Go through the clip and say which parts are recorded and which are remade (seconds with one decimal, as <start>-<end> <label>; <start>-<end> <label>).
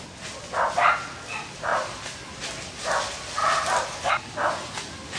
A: 0.0-3.4 recorded; 3.4-4.1 remade; 4.1-5.2 recorded